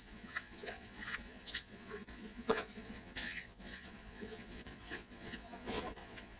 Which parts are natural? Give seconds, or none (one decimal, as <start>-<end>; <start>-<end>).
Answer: none